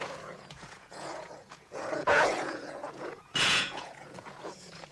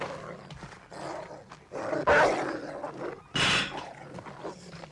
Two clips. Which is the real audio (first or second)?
second